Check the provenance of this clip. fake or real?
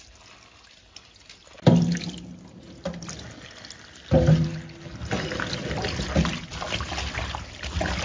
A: real